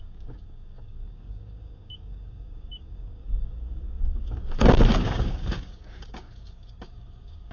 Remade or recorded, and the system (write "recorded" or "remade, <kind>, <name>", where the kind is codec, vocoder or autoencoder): remade, codec, DAC